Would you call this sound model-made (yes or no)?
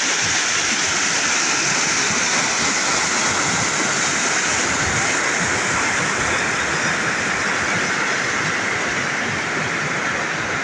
no